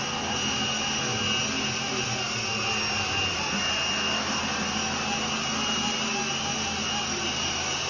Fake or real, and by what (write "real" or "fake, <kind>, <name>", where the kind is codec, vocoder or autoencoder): real